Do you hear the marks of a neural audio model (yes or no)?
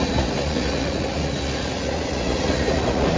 yes